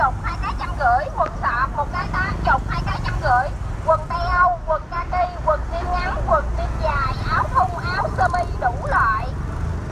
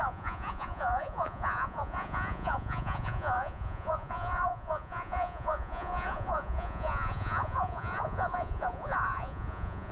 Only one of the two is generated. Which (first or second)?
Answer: second